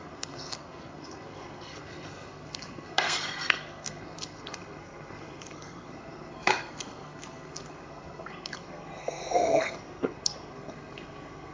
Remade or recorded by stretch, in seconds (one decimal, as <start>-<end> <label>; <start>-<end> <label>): 0.0-11.5 remade